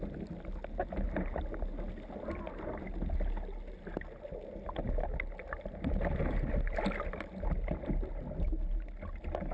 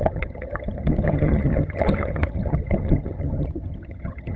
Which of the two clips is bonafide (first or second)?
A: first